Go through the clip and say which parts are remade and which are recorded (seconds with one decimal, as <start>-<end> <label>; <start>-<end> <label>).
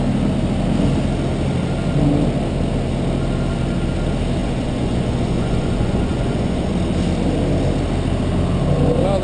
0.0-4.4 recorded; 4.4-6.7 remade; 6.7-9.2 recorded